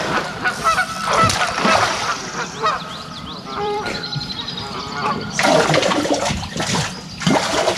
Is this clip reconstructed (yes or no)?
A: yes